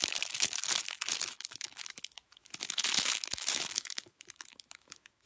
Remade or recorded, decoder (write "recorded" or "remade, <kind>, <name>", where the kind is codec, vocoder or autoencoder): remade, autoencoder, DAC-VAE